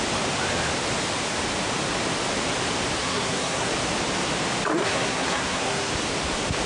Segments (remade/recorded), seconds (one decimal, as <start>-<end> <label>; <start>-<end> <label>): 0.0-3.0 recorded; 3.0-3.7 remade; 3.7-4.7 recorded; 4.7-5.9 remade; 5.9-6.7 recorded